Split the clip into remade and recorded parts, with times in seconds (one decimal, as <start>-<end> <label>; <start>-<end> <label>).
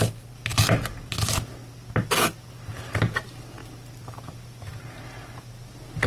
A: 0.0-6.1 recorded